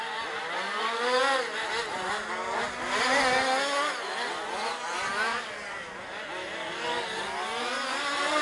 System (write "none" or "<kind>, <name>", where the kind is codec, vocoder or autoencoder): none